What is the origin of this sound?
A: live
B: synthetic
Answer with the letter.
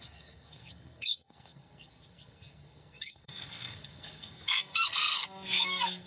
B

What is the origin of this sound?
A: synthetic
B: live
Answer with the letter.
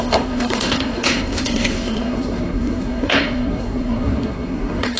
A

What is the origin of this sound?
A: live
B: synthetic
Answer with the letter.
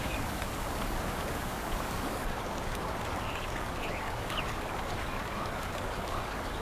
B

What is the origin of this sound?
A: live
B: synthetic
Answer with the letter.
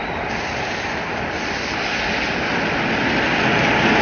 A